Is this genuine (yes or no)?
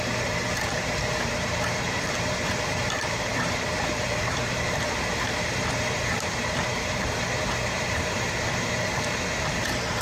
no